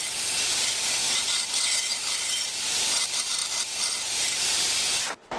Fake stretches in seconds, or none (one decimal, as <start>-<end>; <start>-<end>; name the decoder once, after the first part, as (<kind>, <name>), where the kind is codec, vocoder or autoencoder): 0.0-3.4 (vocoder, BigVGAN v2); 4.4-5.4

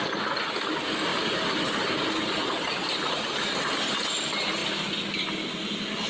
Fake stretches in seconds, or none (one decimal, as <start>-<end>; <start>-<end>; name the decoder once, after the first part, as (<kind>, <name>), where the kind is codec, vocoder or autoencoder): none

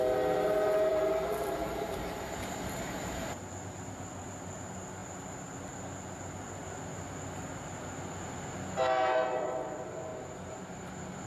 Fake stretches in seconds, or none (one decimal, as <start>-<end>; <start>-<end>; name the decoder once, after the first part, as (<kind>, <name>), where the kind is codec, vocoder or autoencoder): 0.9-2.0 (vocoder, BigVGAN v2); 10.1-10.9

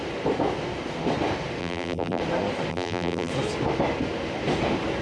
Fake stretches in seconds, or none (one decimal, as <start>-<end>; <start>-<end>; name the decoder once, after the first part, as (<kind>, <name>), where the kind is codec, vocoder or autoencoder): 1.6-2.2 (vocoder, BigVGAN v2); 2.7-3.3

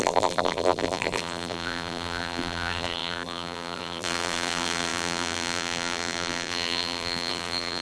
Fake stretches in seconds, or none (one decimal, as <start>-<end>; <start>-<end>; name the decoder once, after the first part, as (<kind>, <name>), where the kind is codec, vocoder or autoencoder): 0.0-7.8 (vocoder, BigVGAN v2)